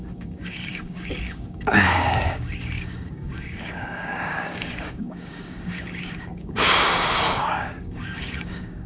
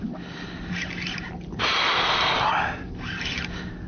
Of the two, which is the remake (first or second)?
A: first